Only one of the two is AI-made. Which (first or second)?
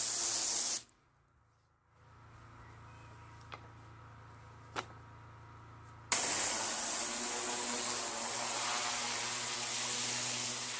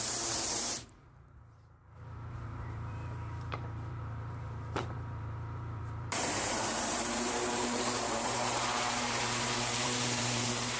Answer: second